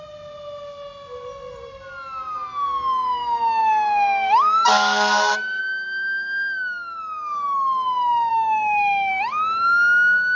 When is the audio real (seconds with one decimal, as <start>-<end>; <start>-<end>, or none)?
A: 0.0-3.6; 5.6-8.3; 9.1-10.4